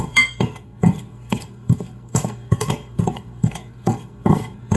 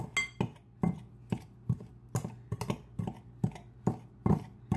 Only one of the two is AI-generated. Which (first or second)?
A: first